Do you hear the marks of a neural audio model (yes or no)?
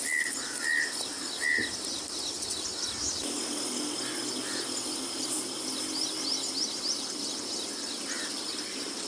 no